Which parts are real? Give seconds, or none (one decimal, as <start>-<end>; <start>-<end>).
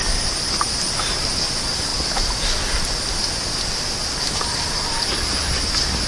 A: 0.0-6.1